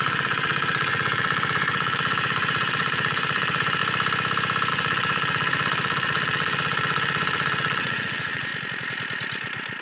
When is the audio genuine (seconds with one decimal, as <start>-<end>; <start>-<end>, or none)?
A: 3.8-4.7; 8.5-9.8